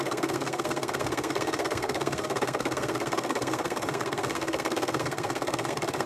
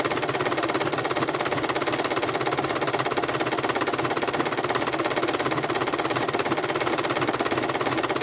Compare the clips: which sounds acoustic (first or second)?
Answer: second